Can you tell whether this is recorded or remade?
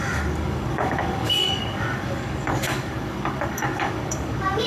remade